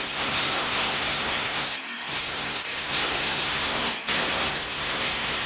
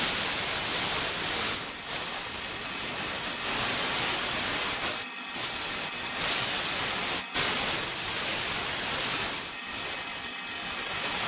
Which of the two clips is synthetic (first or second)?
first